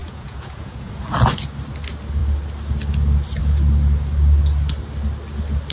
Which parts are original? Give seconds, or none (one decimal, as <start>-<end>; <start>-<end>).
0.9-5.7